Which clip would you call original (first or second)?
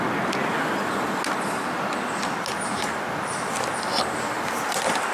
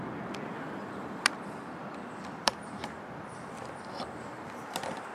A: first